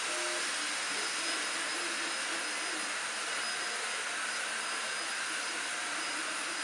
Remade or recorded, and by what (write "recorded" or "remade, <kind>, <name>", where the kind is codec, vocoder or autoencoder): recorded